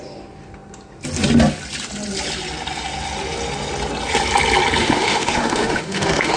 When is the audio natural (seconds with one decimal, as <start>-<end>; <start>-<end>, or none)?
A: 0.0-4.8